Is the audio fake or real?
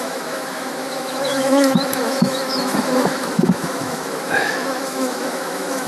fake